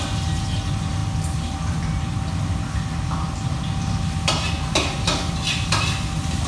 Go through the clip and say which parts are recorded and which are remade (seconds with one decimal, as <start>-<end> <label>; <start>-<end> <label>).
0.0-6.5 recorded